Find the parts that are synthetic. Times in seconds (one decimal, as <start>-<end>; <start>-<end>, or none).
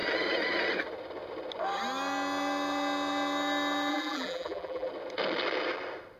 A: 3.9-4.9